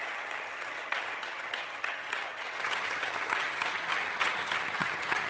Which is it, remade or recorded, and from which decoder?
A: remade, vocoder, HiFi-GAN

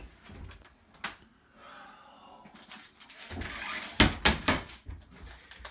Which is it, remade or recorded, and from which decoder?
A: recorded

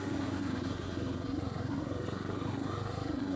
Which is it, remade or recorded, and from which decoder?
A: remade, codec, SNAC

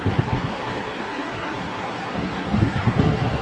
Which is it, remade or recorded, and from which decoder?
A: remade, codec, SNAC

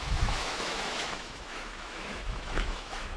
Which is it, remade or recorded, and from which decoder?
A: remade, autoencoder, DAC-VAE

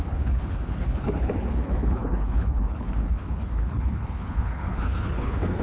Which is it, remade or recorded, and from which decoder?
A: remade, codec, HILCodec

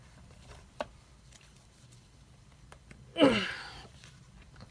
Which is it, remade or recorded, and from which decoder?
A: remade, vocoder, BigVGAN v2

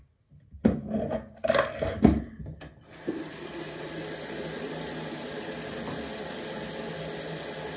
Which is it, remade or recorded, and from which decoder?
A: recorded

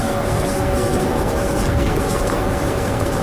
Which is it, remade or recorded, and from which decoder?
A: remade, codec, SNAC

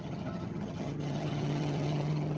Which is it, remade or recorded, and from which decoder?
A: remade, vocoder, HiFi-GAN